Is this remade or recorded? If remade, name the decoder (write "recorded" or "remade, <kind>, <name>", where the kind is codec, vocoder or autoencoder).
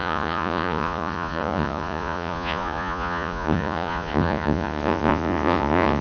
remade, vocoder, Vocos